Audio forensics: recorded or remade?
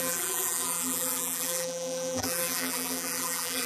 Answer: remade